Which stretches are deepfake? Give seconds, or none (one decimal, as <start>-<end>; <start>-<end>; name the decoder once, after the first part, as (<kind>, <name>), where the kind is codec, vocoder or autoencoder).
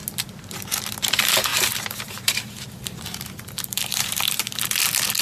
1.5-4.6 (vocoder, BigVGAN v2)